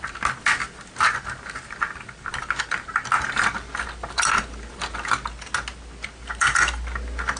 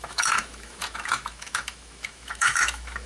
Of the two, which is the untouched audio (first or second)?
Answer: first